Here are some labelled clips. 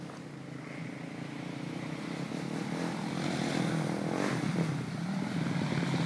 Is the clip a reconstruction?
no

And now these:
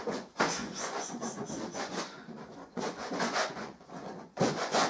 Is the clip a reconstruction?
yes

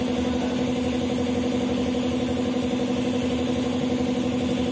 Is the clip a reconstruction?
no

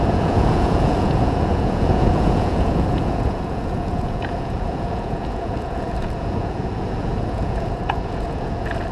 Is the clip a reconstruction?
yes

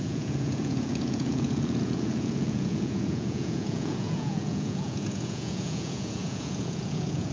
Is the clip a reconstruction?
yes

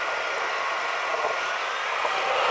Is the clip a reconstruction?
no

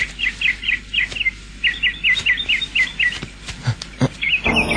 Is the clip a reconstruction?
no